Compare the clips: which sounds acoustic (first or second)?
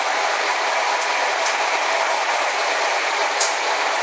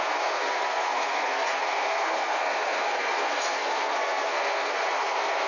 first